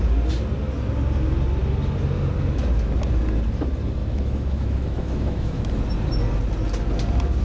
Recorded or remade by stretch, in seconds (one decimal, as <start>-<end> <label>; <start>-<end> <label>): 0.0-4.0 recorded; 4.0-5.7 remade; 5.7-7.4 recorded